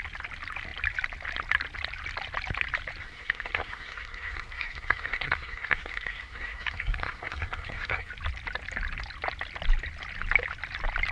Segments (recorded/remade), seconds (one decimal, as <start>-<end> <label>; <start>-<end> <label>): 0.0-3.0 recorded; 3.0-8.1 remade; 8.1-11.1 recorded